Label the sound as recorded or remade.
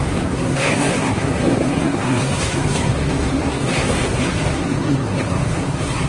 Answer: remade